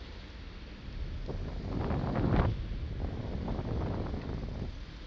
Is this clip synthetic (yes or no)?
no